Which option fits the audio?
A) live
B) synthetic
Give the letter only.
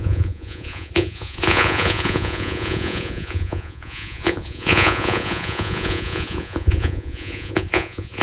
B